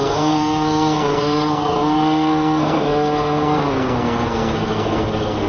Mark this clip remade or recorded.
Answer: remade